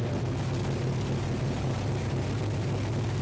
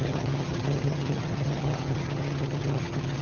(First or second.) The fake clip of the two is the second